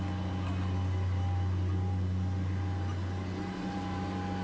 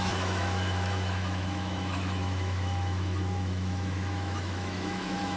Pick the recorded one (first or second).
first